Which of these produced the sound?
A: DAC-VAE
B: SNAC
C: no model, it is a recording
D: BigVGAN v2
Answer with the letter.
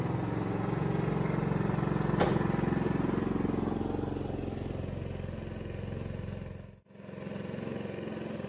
C